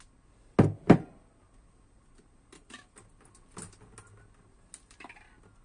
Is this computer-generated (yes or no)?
no